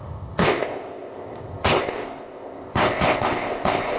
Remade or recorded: remade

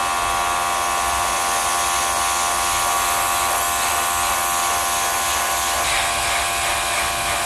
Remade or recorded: recorded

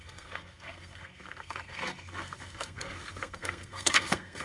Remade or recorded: remade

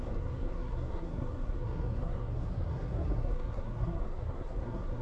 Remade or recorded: remade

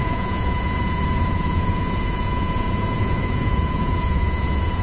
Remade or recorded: remade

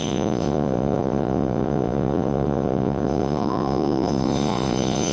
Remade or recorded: remade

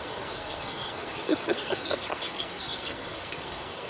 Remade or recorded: remade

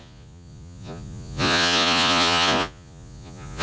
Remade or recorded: remade